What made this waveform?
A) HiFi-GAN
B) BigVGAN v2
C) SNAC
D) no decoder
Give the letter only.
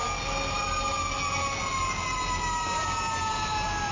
D